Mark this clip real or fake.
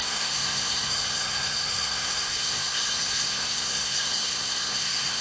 fake